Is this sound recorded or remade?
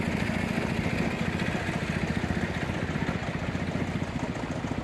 recorded